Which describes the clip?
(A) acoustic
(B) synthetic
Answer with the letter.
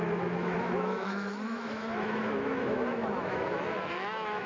B